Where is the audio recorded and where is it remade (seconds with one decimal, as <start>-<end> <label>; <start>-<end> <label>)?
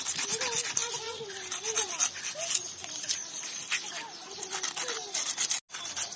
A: 0.0-6.2 recorded